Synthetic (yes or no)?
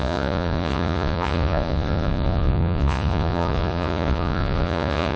yes